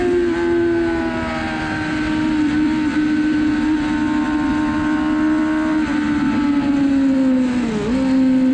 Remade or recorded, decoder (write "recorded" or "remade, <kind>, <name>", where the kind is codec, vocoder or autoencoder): recorded